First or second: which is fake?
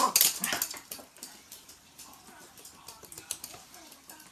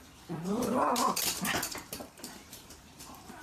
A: second